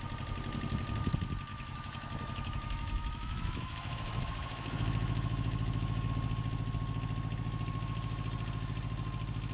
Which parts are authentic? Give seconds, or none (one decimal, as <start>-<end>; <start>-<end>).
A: 0.0-1.5; 6.1-9.5